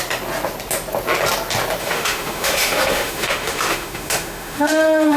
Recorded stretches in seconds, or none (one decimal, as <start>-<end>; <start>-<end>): 0.0-1.8